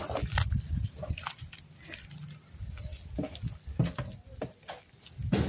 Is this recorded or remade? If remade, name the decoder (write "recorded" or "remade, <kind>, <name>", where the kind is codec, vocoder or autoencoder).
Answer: recorded